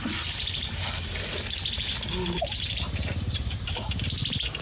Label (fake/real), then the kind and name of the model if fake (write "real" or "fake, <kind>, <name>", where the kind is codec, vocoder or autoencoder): fake, vocoder, BigVGAN v2